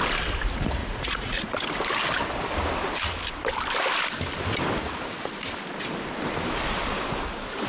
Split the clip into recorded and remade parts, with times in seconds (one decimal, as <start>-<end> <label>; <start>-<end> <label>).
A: 0.0-0.8 recorded; 0.8-1.5 remade; 1.5-7.7 recorded